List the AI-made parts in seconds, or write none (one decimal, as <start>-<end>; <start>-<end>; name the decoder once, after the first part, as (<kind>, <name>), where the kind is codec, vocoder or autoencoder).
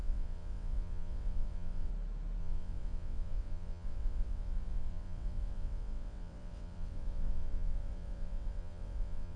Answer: 0.0-1.9 (vocoder, WaveNeXt); 2.4-9.4